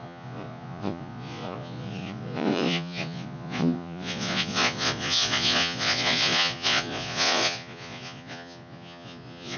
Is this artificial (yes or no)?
yes